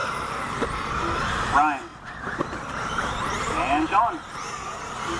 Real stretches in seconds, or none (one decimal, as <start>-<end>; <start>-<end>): 0.6-1.9; 3.9-5.2